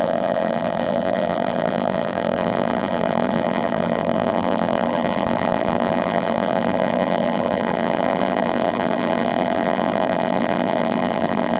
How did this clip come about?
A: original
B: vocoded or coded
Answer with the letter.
B